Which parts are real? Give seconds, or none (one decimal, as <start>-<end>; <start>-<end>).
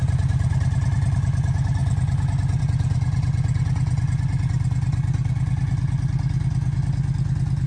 0.0-7.7